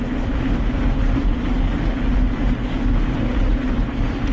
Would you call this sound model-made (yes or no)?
no